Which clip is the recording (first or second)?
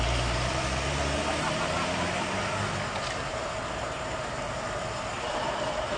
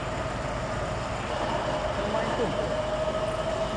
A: second